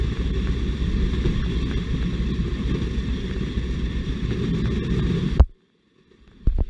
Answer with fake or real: real